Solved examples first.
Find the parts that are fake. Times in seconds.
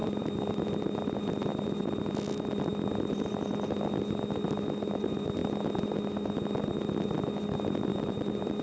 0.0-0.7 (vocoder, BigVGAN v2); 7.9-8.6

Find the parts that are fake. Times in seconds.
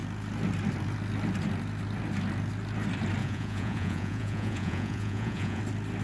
3.2-5.6 (vocoder, Vocos)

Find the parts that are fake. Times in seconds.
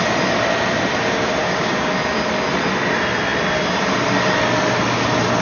1.4-1.9 (codec, DAC)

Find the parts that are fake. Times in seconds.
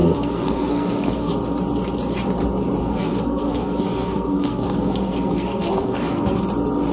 0.0-1.3 (codec, SNAC); 2.8-6.4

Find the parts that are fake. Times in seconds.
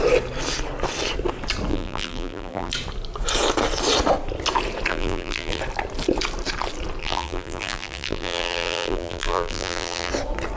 1.7-2.7 (vocoder, BigVGAN v2); 4.9-5.6; 7.0-10.1